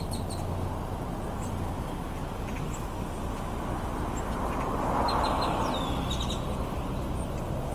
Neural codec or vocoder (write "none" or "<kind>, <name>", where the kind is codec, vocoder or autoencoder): none